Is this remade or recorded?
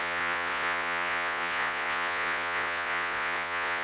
remade